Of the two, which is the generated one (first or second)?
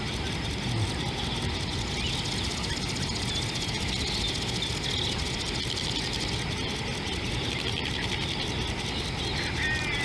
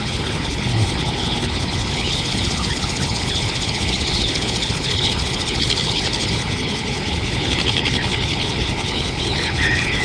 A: second